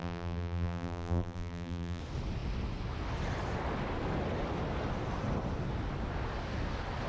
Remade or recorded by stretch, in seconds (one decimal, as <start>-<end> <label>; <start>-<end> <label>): 0.0-2.0 remade; 2.0-7.1 recorded